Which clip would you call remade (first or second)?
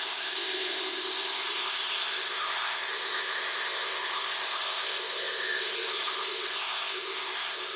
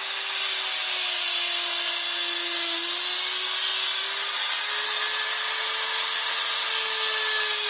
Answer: first